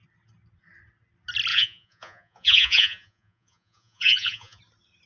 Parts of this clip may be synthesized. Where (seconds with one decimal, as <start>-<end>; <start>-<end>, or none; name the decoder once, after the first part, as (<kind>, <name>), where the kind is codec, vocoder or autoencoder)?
1.5-4.6 (vocoder, Vocos)